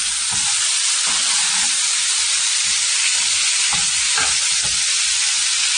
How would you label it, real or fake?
real